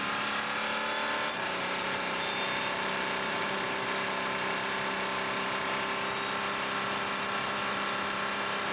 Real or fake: real